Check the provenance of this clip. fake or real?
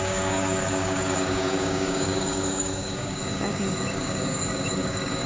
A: fake